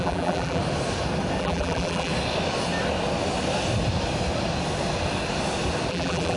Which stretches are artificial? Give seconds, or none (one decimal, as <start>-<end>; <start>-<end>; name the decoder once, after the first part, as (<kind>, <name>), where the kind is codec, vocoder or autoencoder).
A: 0.0-0.6 (vocoder, BigVGAN v2); 1.4-2.1; 5.9-6.4